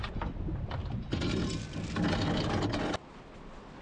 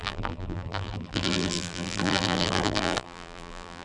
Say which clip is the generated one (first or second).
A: second